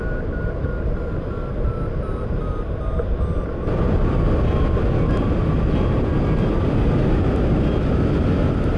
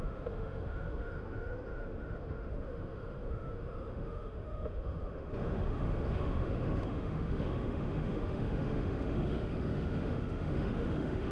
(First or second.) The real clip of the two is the first